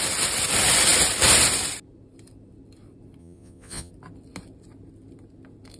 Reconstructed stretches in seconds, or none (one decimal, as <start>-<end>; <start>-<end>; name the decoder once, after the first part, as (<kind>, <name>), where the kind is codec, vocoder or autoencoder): 3.2-3.9 (vocoder, Vocos)